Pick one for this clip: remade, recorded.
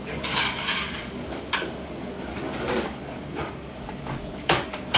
remade